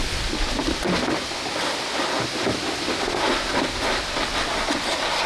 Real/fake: real